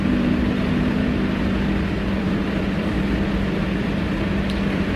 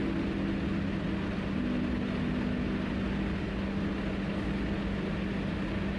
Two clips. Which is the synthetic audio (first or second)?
first